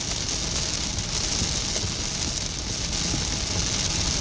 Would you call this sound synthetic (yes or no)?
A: no